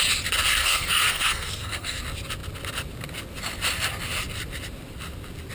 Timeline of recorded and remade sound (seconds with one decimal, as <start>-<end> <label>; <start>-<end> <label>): 0.0-0.6 recorded; 0.6-2.0 remade; 2.0-5.5 recorded

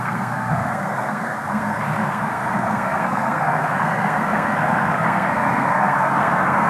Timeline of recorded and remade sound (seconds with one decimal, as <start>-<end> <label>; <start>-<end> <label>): 0.0-6.7 remade

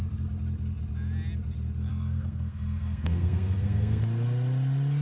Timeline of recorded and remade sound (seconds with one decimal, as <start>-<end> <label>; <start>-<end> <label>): 0.0-1.9 recorded; 1.9-4.0 remade; 4.0-5.0 recorded

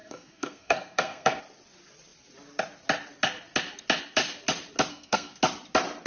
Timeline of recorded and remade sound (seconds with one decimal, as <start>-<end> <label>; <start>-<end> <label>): 0.0-1.4 remade; 1.4-4.9 recorded; 4.9-5.4 remade; 5.4-6.1 recorded

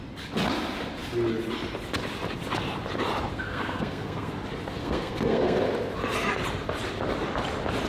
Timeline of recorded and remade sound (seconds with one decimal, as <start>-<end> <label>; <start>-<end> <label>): 0.0-3.3 recorded; 3.3-4.3 remade; 4.3-4.8 recorded; 4.8-5.6 remade; 5.6-7.9 recorded

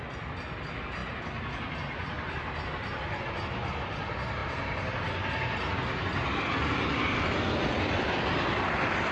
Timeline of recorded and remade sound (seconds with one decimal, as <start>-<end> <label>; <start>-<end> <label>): 0.0-9.1 recorded

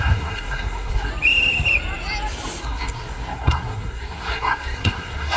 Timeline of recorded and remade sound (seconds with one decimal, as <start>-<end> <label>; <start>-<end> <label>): 0.0-1.1 remade; 1.1-2.6 recorded; 2.6-5.4 remade